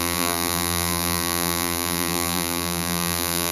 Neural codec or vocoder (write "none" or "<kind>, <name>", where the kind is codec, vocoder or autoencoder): vocoder, BigVGAN v2